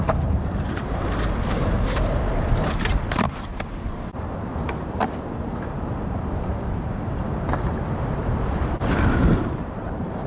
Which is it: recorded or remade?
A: remade